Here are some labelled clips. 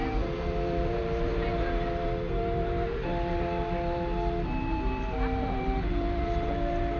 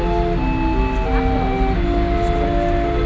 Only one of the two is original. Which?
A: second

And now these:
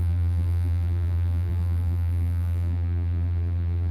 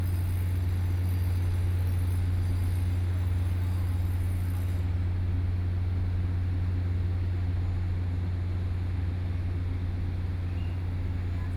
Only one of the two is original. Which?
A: second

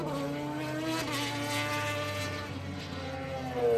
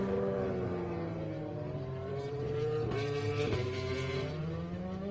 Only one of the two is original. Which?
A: first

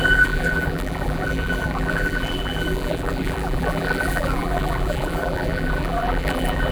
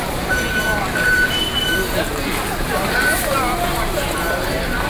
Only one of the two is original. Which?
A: second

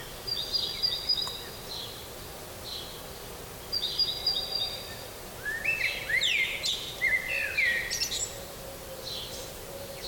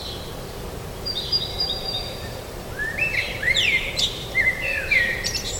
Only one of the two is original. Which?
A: first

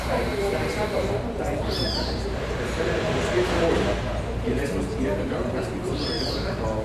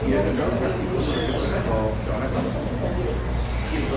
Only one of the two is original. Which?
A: second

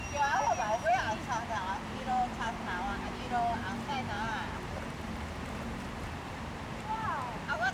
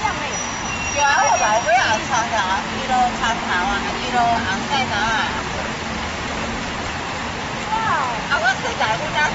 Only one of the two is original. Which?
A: second